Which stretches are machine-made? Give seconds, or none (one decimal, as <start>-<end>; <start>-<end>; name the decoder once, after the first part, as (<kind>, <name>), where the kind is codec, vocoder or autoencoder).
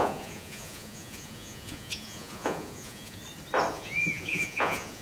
0.0-3.2 (vocoder, Vocos); 3.7-5.0